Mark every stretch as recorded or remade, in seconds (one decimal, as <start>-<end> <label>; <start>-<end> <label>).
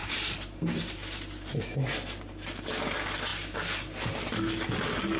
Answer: 0.0-1.7 remade; 1.7-5.2 recorded